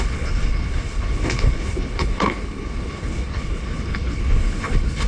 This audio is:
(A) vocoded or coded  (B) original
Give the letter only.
A